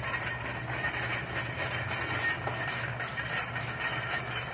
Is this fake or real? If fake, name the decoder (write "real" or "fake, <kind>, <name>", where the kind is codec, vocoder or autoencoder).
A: real